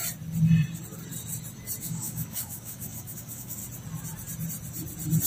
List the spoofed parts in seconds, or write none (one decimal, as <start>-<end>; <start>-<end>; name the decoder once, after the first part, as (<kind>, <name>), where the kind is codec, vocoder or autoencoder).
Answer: 1.8-3.6 (codec, DAC)